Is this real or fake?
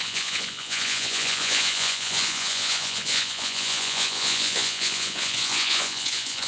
fake